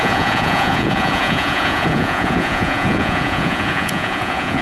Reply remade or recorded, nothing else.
remade